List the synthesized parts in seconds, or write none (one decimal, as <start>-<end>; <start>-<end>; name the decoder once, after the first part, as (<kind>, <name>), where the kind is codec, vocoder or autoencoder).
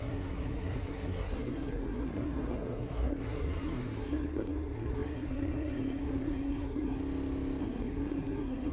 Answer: 0.0-7.0 (codec, SNAC); 7.6-8.7